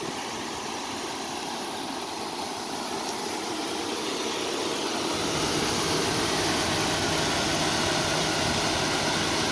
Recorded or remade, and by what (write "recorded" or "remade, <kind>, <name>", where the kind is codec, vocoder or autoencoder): recorded